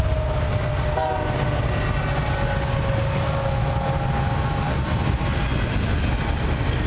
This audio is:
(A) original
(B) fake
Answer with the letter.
A